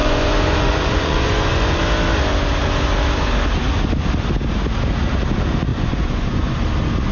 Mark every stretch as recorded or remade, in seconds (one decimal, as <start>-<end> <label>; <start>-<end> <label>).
0.0-1.8 remade; 1.8-5.7 recorded; 5.7-6.6 remade; 6.6-7.1 recorded